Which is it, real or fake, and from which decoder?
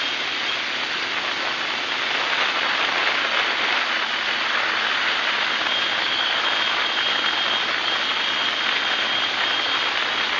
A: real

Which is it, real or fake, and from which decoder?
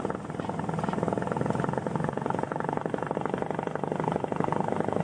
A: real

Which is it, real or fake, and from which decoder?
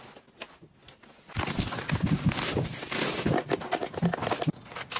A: real